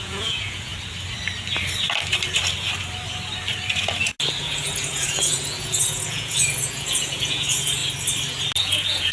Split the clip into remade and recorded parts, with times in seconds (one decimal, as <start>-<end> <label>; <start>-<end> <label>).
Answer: 0.0-0.7 remade; 0.7-4.4 recorded; 4.4-7.8 remade; 7.8-8.6 recorded; 8.6-9.1 remade